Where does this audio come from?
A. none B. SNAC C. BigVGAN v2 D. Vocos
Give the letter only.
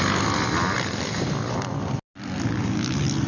A